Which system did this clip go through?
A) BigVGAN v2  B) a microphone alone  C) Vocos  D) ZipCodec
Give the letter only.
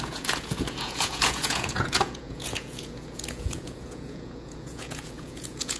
C